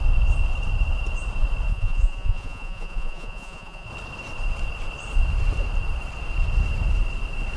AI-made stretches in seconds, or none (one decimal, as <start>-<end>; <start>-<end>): 1.7-3.9